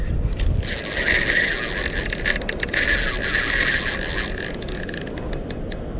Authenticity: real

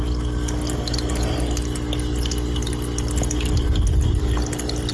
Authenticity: real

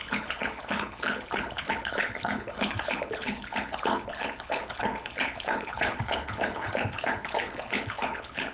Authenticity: fake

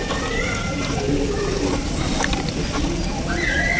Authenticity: real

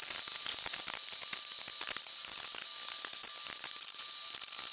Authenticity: real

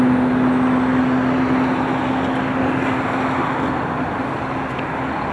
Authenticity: real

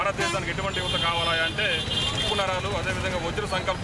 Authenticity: real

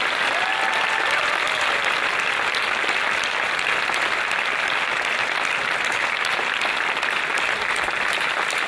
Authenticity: real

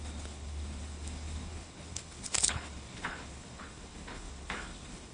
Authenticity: fake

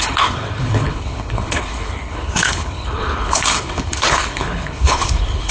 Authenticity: fake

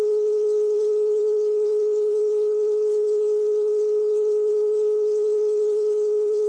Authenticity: fake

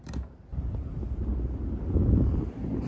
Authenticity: real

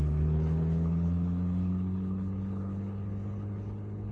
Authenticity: fake